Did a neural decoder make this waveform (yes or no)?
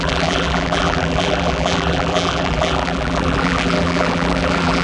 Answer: yes